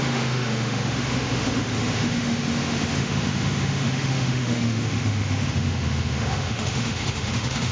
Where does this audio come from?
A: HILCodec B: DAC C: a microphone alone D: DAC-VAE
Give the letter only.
D